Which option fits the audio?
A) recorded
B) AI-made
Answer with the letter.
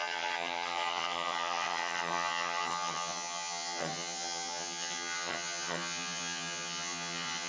B